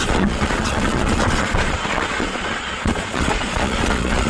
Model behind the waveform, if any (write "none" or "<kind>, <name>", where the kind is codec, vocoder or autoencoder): vocoder, Vocos